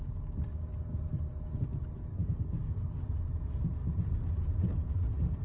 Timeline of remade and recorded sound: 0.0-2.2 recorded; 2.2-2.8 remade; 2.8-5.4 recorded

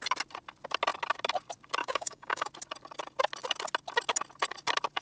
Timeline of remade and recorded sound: 0.0-1.8 recorded; 1.8-2.5 remade; 2.5-5.0 recorded